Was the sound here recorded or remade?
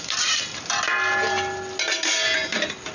recorded